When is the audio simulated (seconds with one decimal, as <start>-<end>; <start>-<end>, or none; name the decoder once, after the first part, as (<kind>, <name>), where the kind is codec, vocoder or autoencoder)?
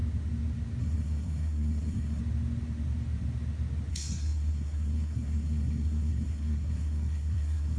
0.8-2.2 (codec, SNAC); 3.9-7.8